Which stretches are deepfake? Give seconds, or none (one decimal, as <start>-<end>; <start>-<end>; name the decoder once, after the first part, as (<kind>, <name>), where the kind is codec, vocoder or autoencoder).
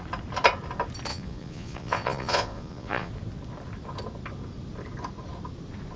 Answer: 1.1-3.1 (vocoder, Vocos)